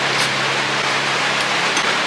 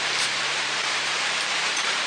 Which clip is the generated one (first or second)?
second